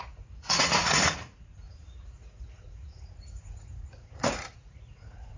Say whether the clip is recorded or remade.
remade